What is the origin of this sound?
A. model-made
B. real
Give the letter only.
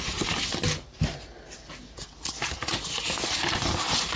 B